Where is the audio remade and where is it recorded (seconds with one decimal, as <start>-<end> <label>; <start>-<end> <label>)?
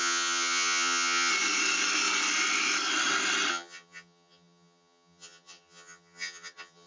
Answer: 0.0-1.3 remade; 1.3-3.5 recorded; 3.5-6.9 remade